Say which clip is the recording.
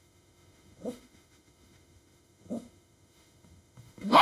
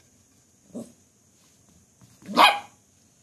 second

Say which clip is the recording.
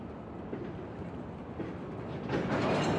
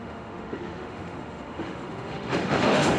first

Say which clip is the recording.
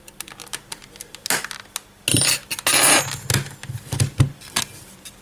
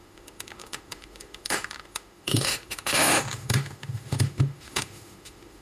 first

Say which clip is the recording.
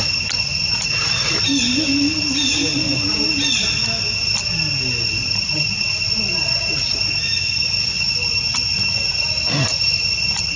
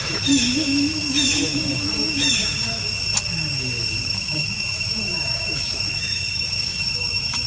first